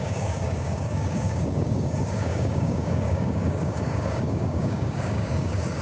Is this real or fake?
fake